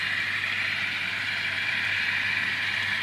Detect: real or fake fake